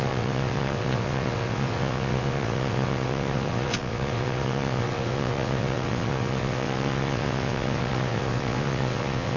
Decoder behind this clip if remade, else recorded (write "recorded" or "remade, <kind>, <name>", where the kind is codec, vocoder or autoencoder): remade, vocoder, WaveNeXt